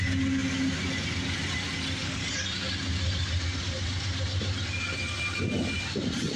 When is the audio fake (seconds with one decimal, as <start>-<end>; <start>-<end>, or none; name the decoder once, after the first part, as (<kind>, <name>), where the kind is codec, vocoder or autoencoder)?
none